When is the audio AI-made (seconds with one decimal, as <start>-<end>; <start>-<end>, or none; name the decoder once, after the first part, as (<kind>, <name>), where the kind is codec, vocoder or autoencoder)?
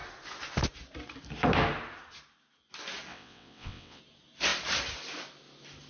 3.1-4.0 (vocoder, WaveNeXt)